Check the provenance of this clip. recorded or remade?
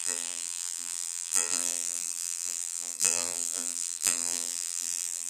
remade